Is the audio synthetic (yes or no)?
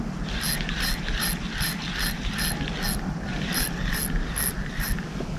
no